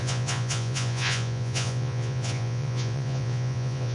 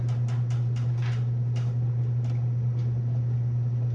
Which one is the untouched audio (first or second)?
second